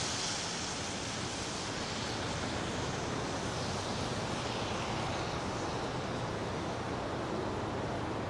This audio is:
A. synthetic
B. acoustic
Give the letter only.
B